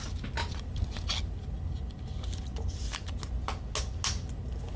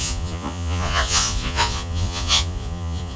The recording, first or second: first